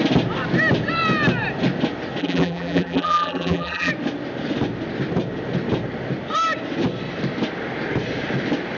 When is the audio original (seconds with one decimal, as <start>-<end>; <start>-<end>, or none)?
0.0-2.2; 3.9-8.8